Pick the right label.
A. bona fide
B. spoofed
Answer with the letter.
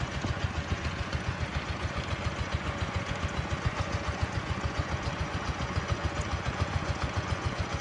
B